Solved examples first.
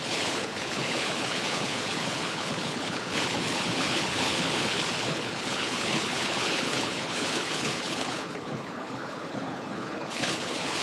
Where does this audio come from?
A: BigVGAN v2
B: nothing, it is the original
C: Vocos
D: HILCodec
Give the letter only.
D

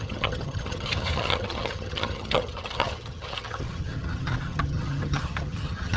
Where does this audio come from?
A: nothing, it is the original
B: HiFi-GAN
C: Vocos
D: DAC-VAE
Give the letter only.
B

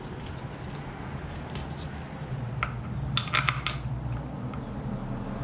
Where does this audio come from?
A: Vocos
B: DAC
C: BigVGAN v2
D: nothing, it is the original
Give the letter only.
D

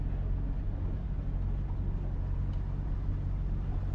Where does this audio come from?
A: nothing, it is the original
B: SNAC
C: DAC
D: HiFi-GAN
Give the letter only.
A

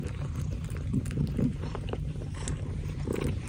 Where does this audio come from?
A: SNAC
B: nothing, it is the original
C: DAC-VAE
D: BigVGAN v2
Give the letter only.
D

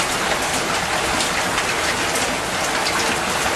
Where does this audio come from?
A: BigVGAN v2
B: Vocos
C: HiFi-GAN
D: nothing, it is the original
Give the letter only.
D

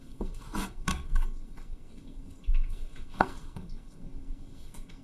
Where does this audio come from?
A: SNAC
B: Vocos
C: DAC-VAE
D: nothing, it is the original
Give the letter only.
A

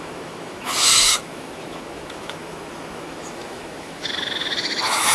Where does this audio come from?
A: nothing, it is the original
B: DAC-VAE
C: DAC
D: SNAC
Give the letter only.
B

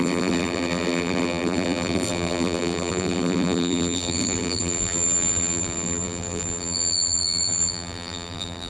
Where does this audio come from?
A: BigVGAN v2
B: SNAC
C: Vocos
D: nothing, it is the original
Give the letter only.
A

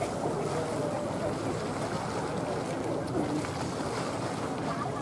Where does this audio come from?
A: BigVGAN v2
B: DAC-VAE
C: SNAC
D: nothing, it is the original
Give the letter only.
D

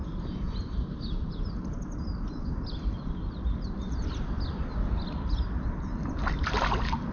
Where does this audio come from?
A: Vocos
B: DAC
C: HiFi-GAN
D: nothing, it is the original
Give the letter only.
D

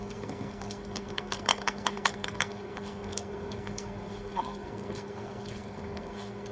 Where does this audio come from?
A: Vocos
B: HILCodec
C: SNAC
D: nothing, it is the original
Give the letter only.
C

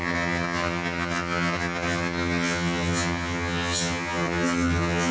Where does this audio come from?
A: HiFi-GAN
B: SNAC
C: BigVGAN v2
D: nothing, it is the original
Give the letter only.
A